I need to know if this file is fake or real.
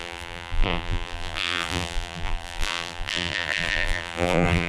fake